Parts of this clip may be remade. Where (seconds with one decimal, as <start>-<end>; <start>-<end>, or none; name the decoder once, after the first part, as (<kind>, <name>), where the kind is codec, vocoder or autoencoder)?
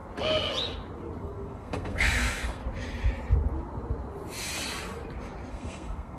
1.2-2.6 (codec, SNAC); 5.5-6.2